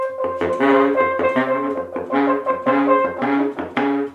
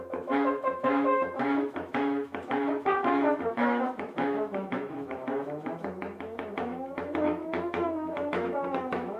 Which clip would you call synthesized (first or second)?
second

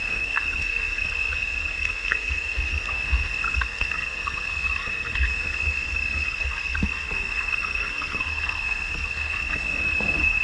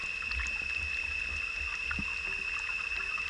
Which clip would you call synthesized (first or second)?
first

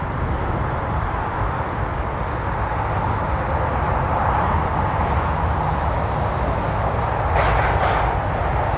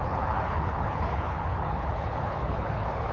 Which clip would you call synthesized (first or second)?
second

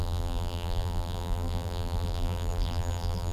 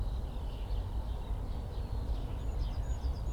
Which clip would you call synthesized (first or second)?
first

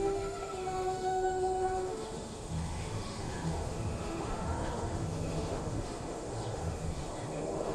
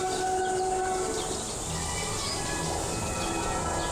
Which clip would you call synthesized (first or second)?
first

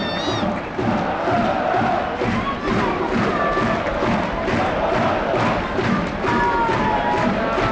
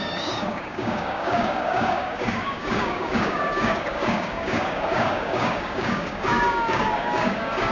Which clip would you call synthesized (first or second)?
second